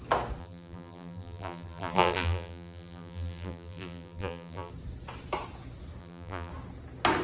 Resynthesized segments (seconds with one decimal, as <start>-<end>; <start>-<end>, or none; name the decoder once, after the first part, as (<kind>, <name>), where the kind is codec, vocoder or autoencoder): 0.4-4.7 (vocoder, BigVGAN v2); 6.0-6.5